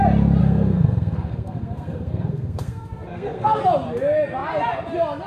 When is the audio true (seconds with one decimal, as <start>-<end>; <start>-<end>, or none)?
0.0-0.4; 3.6-5.3